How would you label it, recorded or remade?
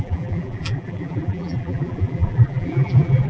remade